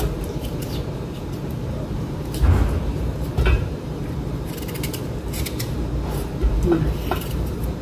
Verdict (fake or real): fake